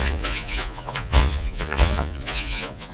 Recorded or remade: remade